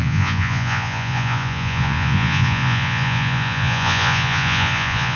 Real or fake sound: fake